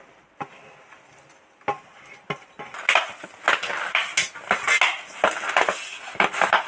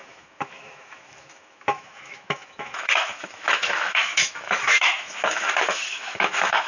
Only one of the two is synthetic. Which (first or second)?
second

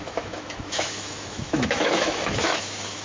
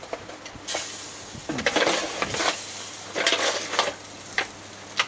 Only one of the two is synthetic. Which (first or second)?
first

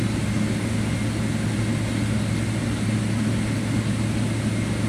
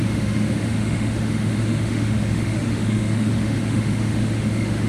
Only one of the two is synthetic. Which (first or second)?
second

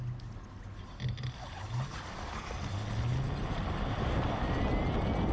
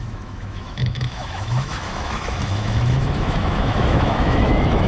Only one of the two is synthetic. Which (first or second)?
second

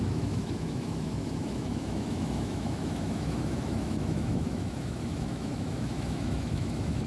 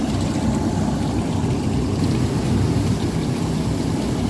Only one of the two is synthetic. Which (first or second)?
first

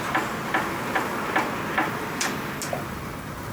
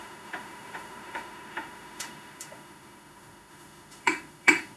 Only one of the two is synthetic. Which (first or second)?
second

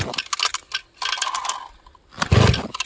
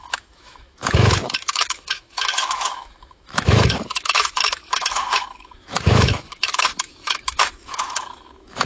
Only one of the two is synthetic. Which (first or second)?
second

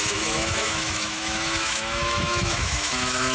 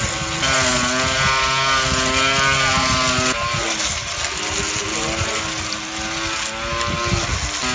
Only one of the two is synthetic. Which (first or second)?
first